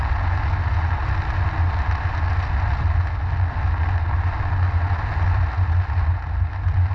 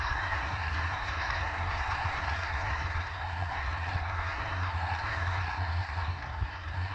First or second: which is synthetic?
second